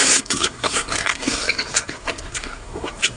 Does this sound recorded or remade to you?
remade